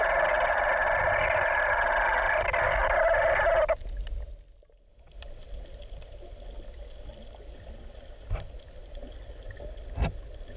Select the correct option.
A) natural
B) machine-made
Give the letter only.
A